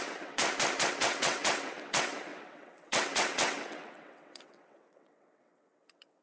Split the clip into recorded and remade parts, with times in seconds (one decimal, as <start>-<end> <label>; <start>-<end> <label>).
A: 0.0-0.4 remade; 0.4-0.9 recorded; 0.9-6.2 remade